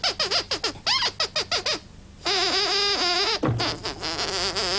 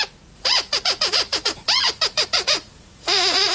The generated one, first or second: second